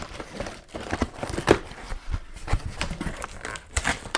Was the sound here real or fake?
fake